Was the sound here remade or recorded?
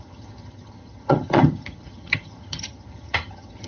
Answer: remade